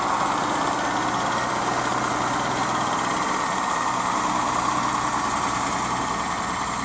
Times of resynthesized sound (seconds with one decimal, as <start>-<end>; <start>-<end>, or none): none